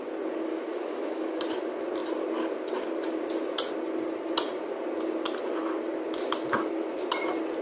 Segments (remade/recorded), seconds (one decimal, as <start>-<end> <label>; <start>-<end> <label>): 0.0-0.5 recorded; 0.5-1.4 remade; 1.4-7.6 recorded